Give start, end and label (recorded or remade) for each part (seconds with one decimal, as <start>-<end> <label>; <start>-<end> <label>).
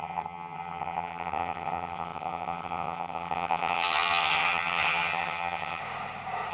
0.0-5.8 remade; 5.8-6.5 recorded